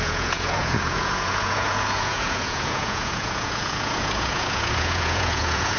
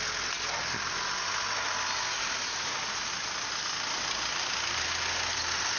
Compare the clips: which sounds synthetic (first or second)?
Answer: first